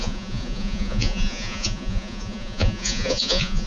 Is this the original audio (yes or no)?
no